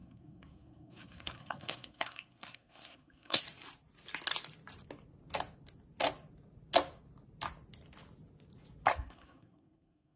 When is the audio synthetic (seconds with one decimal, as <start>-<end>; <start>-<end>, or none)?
0.0-3.4; 8.9-10.2